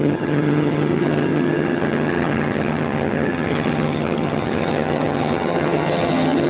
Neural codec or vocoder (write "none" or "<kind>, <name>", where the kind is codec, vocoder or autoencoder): vocoder, HiFi-GAN